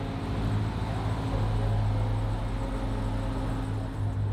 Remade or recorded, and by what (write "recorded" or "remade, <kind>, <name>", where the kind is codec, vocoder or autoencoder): recorded